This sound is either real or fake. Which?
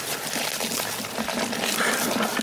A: real